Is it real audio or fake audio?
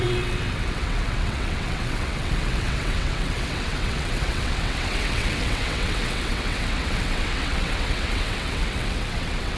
fake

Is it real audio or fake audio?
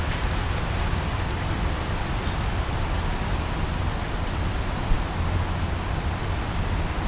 real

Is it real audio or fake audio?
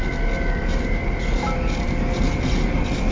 real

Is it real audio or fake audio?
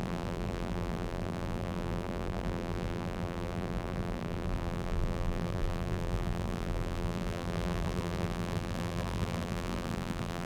fake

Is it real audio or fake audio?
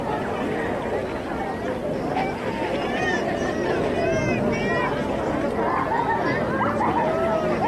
real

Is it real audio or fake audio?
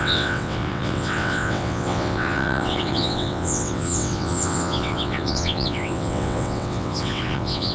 fake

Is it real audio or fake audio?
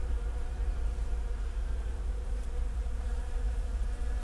fake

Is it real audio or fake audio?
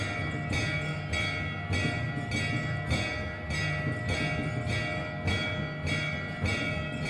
real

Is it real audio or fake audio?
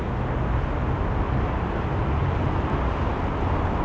real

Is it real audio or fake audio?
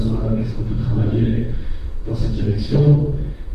fake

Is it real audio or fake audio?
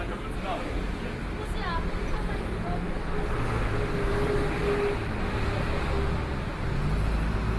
real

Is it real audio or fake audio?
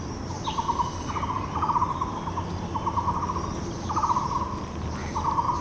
real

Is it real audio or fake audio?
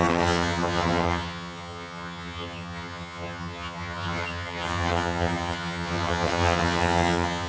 fake